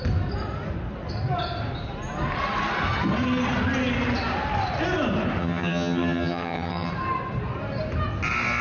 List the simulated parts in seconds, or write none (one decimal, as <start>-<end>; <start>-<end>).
5.4-6.9